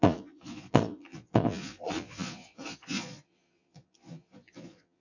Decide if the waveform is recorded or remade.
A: remade